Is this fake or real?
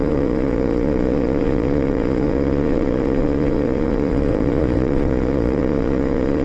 fake